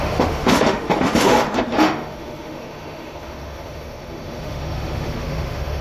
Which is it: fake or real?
fake